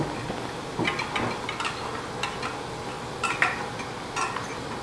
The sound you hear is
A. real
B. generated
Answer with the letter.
A